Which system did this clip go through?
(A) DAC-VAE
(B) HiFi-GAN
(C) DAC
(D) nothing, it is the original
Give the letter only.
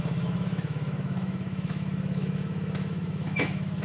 A